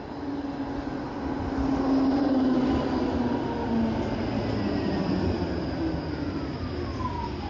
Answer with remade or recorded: recorded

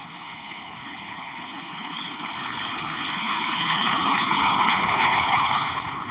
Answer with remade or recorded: remade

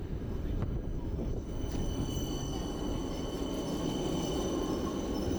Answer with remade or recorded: recorded